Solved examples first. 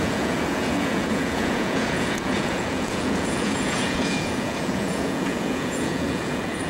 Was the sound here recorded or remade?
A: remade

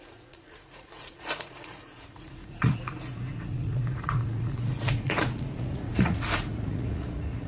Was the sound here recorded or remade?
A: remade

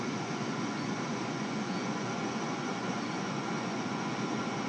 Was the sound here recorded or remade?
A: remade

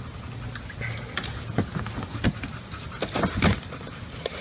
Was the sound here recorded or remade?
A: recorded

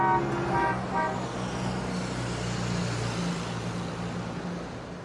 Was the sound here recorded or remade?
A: recorded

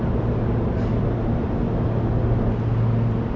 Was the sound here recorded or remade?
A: recorded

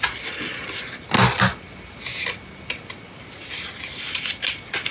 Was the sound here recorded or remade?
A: recorded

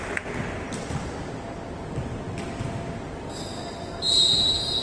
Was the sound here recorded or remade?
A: recorded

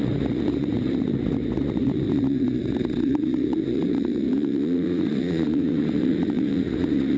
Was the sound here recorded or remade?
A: remade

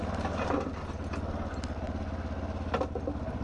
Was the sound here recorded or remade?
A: recorded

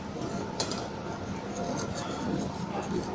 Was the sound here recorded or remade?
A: recorded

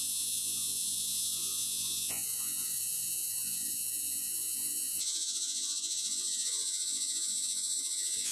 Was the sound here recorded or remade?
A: remade